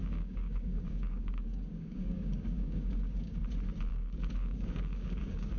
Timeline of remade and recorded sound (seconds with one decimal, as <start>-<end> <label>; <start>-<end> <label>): 0.0-3.4 remade; 3.4-3.9 recorded; 3.9-5.6 remade